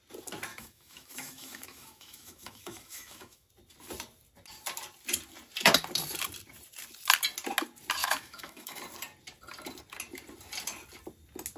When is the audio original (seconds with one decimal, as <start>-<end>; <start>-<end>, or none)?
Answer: 0.0-0.5; 3.5-8.0; 8.8-11.6